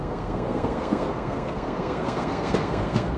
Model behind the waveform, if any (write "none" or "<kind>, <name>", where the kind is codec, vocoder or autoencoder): codec, SNAC